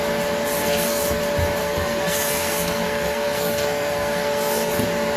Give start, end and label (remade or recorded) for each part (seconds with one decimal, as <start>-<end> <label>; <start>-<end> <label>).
0.0-0.6 recorded; 0.6-1.2 remade; 1.2-1.6 recorded; 1.6-4.7 remade; 4.7-5.2 recorded